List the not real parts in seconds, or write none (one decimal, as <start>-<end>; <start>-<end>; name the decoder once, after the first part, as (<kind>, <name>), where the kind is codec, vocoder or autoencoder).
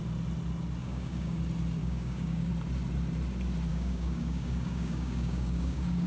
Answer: 0.8-1.4 (codec, DAC); 1.8-2.5; 3.7-6.1